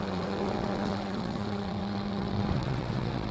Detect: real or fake fake